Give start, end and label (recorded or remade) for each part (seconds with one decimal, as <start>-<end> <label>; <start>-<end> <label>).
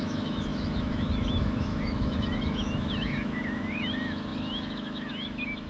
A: 0.0-5.7 remade